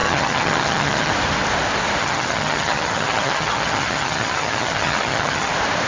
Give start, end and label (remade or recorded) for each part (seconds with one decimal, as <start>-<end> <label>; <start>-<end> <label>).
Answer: 0.0-1.1 remade; 1.1-2.0 recorded; 2.0-5.5 remade; 5.5-5.9 recorded